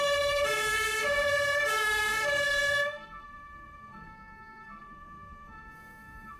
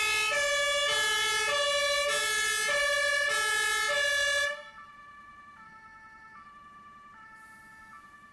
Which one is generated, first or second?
first